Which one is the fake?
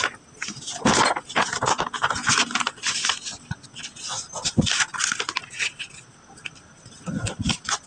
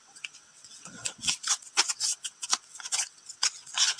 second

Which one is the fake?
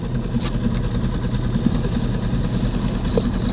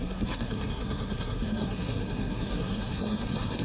second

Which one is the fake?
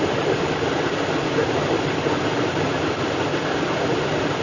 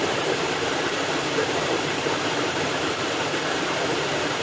second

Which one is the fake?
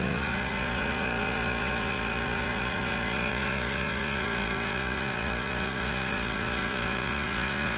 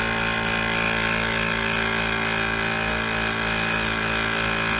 first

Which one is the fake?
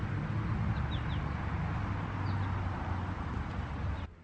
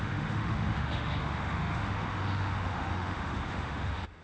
second